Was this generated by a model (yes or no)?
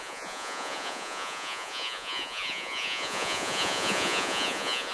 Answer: yes